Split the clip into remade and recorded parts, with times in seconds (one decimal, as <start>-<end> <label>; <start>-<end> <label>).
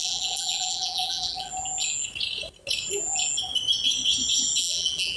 0.0-1.5 remade; 1.5-4.6 recorded; 4.6-5.2 remade